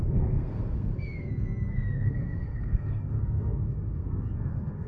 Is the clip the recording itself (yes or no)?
no